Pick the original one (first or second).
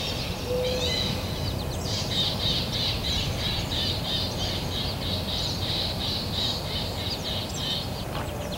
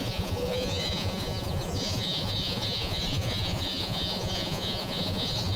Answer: first